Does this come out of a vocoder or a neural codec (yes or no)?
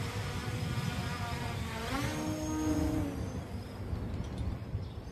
no